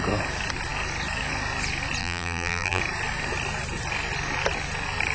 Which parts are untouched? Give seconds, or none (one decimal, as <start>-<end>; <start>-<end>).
0.0-2.0; 2.8-5.1